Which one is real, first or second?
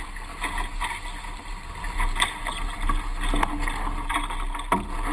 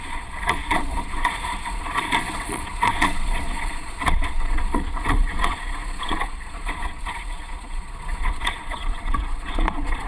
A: first